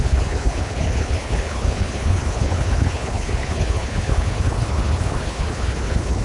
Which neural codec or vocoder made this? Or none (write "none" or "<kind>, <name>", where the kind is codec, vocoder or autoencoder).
codec, HILCodec